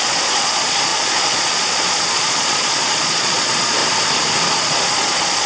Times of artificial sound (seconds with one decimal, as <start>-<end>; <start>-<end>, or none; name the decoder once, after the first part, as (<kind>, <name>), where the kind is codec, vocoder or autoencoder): 0.0-3.8 (vocoder, Vocos); 4.5-5.5